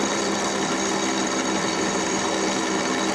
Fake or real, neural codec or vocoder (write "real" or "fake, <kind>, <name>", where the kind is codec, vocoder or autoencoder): real